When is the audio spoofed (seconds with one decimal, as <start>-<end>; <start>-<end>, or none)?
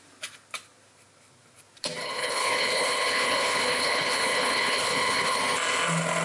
2.0-5.4